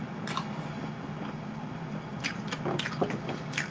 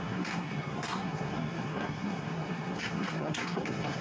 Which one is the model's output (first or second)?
second